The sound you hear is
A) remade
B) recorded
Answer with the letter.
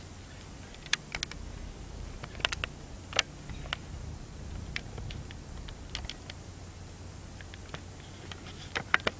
B